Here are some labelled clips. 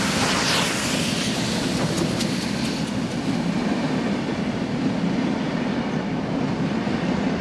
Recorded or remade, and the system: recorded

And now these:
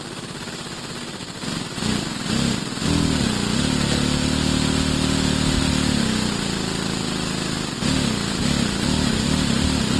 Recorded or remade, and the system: recorded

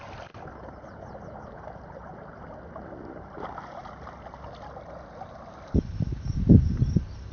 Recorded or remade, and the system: recorded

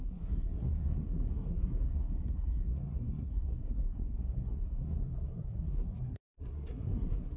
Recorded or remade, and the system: remade, codec, SNAC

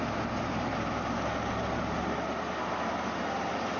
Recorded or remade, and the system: recorded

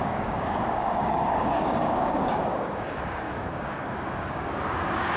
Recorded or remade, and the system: remade, codec, DAC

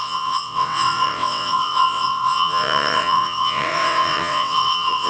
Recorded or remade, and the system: remade, vocoder, WaveNeXt